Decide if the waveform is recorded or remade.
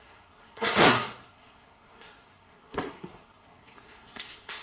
remade